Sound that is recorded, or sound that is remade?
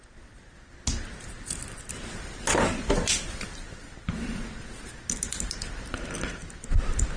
recorded